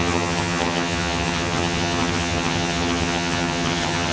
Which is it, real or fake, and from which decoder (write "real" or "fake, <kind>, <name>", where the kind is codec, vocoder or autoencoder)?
fake, vocoder, HiFi-GAN